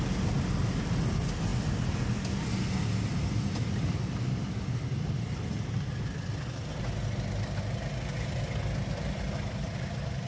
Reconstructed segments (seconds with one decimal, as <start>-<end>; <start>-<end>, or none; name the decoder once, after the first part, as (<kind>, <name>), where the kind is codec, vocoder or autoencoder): none